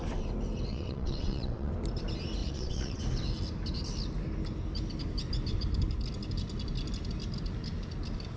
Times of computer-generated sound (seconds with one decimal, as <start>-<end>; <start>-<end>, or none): 0.7-1.7; 2.4-3.0